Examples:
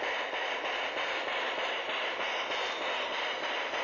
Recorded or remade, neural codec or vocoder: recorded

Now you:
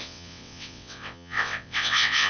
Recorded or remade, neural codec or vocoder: remade, vocoder, WaveNeXt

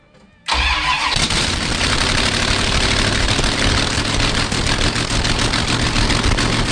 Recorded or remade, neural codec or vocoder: recorded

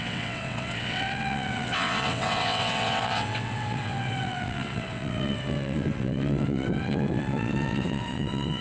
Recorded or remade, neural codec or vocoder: remade, vocoder, WaveNeXt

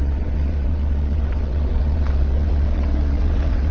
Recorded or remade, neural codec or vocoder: remade, vocoder, WaveNeXt